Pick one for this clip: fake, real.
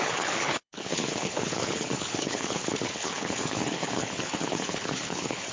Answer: fake